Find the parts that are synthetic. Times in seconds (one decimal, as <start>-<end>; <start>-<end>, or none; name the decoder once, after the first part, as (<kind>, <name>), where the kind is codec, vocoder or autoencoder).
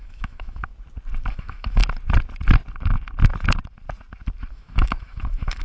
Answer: 0.0-0.7 (autoencoder, DAC-VAE); 1.3-1.8; 4.5-5.6